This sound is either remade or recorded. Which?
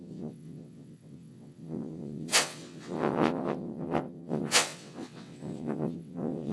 remade